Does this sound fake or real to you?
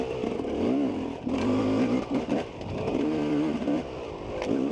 fake